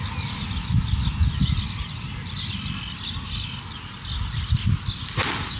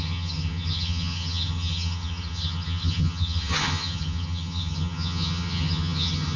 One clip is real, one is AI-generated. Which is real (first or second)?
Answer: first